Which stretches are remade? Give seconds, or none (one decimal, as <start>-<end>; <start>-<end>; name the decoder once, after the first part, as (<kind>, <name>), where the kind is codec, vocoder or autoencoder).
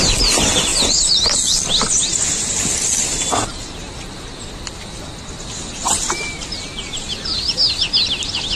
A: none